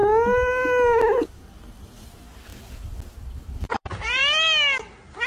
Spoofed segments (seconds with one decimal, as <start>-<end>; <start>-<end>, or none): 1.3-2.5; 3.1-4.2